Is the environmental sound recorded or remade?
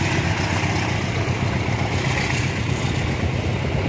recorded